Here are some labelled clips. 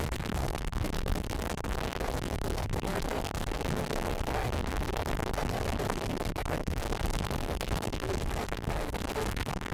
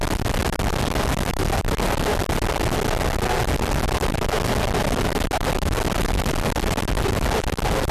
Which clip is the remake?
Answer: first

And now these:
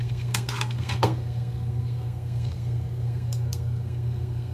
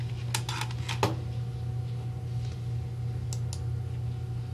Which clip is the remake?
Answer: first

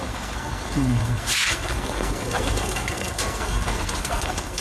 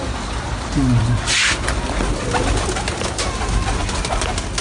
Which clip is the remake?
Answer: first